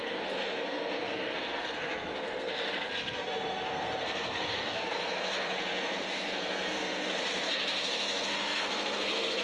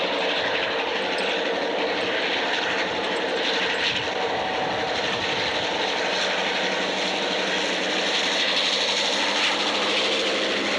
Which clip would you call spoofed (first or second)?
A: first